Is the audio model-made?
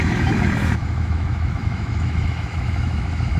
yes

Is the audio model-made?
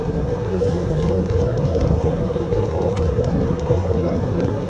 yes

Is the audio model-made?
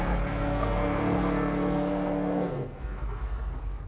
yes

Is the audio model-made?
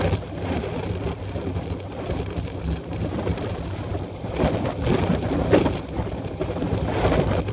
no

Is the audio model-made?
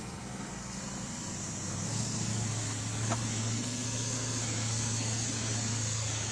yes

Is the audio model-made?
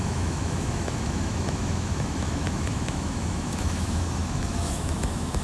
yes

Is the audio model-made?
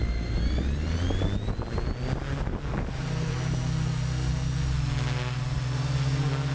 no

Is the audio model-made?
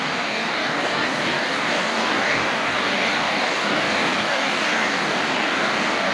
yes